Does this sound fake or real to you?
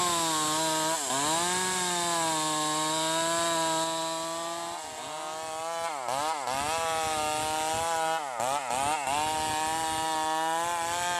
real